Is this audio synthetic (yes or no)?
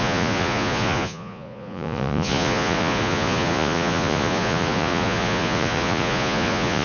yes